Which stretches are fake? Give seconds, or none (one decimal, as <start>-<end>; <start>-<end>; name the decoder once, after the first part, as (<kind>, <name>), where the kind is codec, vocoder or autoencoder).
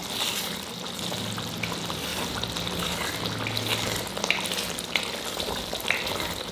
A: 2.1-3.0 (vocoder, BigVGAN v2)